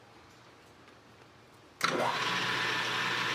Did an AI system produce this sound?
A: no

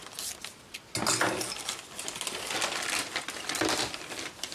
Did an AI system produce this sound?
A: no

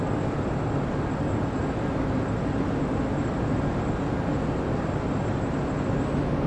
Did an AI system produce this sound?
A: no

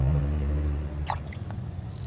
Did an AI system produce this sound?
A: yes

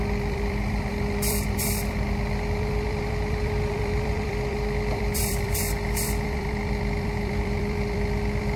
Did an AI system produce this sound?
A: yes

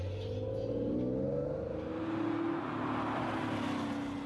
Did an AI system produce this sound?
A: no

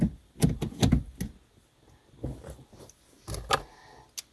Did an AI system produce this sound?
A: no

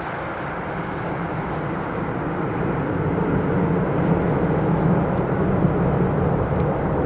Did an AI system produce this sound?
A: no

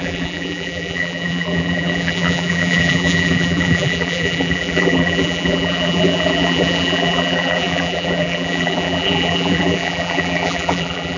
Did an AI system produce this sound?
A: yes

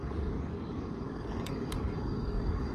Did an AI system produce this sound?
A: yes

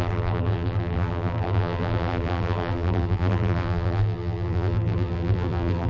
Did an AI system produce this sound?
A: yes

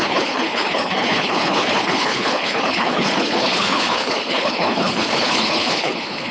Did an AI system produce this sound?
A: yes